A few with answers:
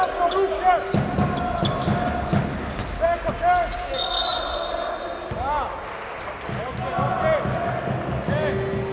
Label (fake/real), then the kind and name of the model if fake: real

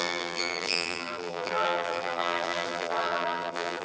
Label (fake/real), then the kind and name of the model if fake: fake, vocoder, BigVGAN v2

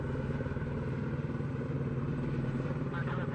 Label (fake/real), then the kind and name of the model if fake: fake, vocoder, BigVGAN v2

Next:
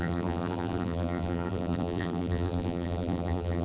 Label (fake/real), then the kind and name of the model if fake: fake, vocoder, BigVGAN v2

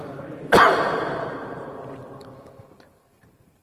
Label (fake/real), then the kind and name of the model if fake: fake, vocoder, BigVGAN v2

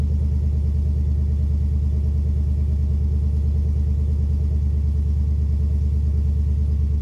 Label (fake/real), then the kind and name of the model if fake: real